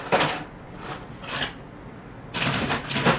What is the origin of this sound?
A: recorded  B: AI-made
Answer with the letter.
A